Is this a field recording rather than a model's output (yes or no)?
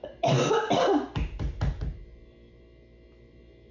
yes